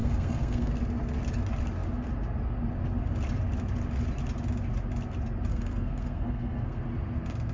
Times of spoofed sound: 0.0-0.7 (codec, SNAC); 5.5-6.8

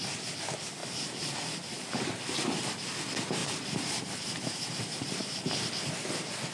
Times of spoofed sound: 0.8-1.9 (vocoder, BigVGAN v2); 3.4-6.1